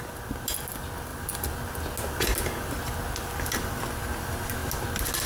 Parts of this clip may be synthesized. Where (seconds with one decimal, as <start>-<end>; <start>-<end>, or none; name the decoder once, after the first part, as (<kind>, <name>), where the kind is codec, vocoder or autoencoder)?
none